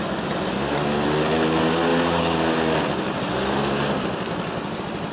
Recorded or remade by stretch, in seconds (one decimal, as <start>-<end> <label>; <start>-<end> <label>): 0.0-5.1 recorded